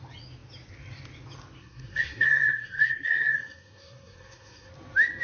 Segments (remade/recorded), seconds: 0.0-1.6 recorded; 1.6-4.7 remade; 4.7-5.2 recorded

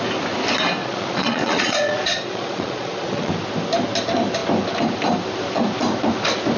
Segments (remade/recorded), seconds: 0.0-0.8 recorded; 0.8-3.3 remade; 3.3-6.6 recorded